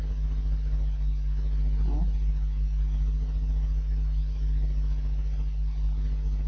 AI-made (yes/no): no